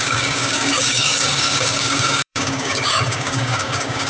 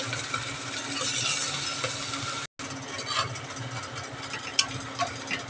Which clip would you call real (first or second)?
second